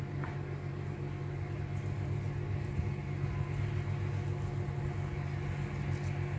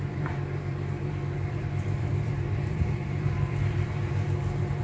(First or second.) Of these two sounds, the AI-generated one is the second